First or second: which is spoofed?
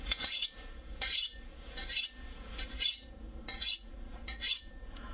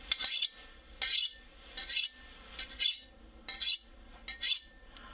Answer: first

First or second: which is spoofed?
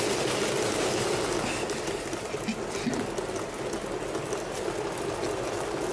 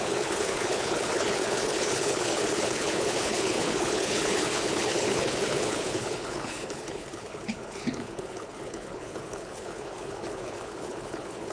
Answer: second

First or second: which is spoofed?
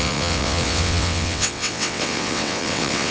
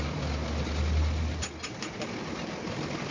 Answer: first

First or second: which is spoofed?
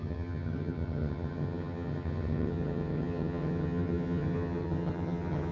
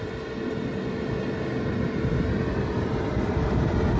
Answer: first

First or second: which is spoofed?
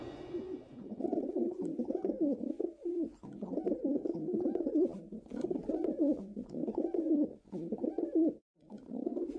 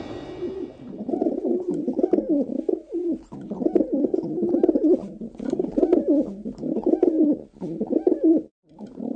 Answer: first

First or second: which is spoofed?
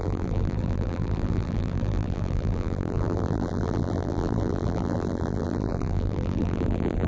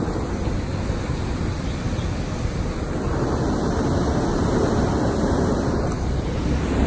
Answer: first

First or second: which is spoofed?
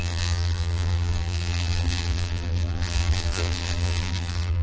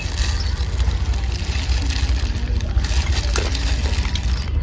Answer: first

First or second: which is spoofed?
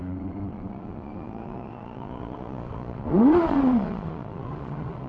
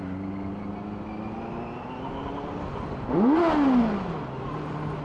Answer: first